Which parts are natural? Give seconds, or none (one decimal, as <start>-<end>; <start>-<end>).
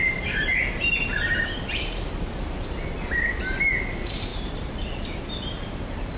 0.5-3.9